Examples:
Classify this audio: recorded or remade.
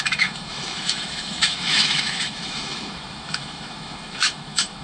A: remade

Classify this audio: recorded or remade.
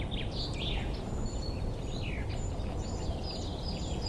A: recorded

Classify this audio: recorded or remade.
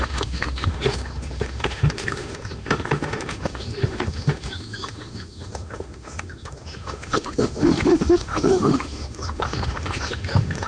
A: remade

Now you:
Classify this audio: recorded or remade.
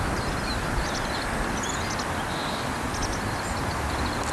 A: recorded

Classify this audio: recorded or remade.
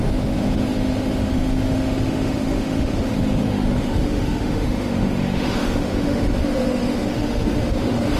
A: remade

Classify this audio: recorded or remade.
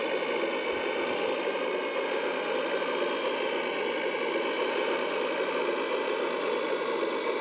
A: recorded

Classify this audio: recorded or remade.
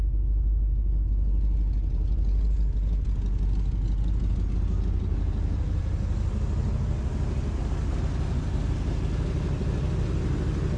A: recorded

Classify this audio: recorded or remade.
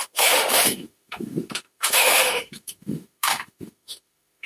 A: remade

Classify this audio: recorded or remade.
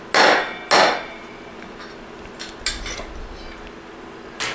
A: recorded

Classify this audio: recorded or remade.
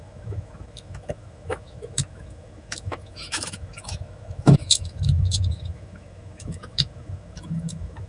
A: remade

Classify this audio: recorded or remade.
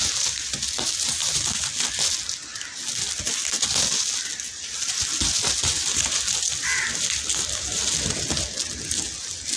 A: recorded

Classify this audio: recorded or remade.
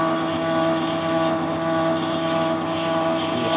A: recorded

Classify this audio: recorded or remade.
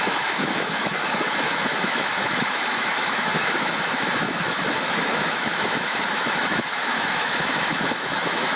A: remade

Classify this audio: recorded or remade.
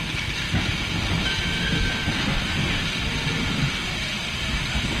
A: recorded